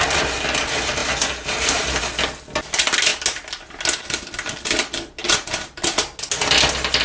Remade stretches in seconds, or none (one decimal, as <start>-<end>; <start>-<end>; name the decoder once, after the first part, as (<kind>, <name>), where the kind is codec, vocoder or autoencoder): none